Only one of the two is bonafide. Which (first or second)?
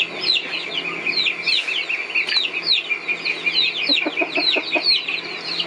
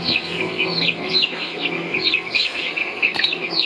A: first